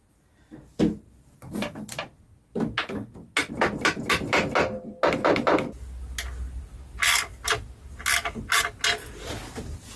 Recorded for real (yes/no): yes